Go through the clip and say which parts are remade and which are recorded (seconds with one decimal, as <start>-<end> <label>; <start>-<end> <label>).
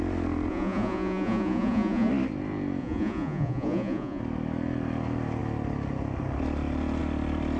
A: 0.0-0.5 recorded; 0.5-2.1 remade; 2.1-2.8 recorded; 2.8-4.2 remade; 4.2-7.6 recorded